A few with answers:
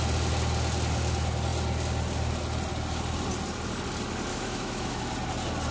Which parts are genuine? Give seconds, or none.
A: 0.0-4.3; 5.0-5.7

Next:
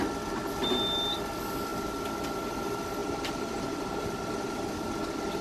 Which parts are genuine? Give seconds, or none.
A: 0.0-3.0; 4.7-5.4

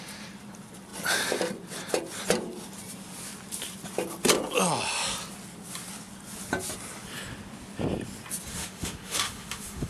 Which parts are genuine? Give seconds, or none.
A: 0.0-8.5

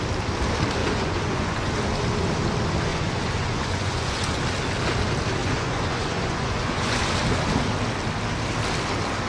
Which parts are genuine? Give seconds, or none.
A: 0.0-0.8; 1.7-2.9; 4.4-5.4; 7.0-9.3

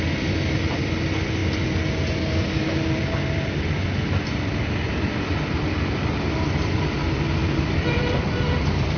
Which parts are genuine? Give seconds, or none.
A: 0.0-9.0